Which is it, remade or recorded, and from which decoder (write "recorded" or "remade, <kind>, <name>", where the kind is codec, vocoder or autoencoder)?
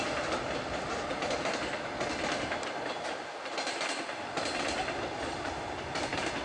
recorded